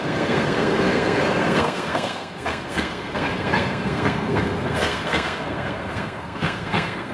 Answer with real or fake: fake